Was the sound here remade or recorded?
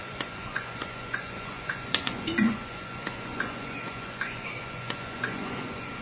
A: remade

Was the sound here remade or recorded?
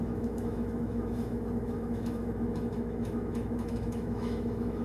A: remade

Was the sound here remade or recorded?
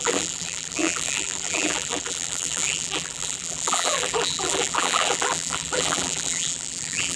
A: remade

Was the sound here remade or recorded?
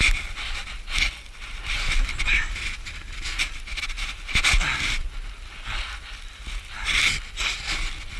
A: recorded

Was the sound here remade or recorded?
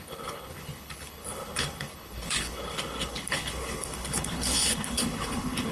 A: remade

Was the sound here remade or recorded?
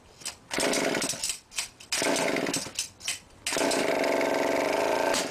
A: recorded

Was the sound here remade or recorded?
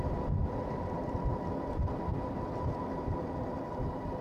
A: recorded